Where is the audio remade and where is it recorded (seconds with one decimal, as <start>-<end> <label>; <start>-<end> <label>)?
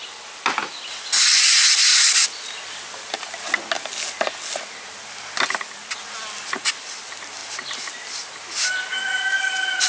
0.0-9.9 recorded